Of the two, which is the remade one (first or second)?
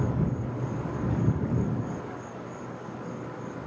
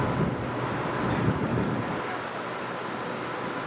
first